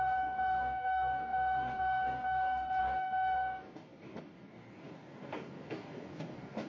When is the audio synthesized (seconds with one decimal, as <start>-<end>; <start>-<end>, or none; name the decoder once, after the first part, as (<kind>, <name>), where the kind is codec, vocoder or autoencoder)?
0.0-6.7 (codec, DAC)